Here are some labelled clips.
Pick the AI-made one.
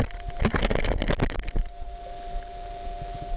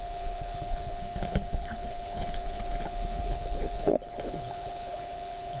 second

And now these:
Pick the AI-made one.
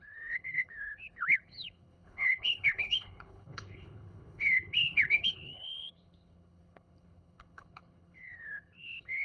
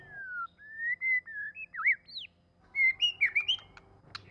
first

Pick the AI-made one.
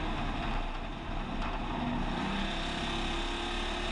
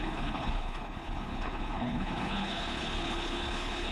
second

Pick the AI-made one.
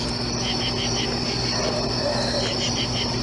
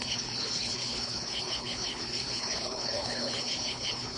second